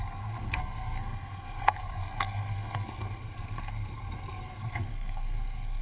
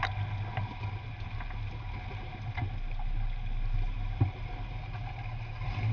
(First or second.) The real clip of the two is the second